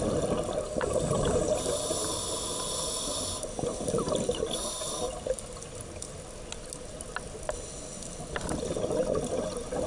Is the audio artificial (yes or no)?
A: no